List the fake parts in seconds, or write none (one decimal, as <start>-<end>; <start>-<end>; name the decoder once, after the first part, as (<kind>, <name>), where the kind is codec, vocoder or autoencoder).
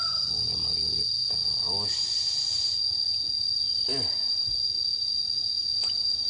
none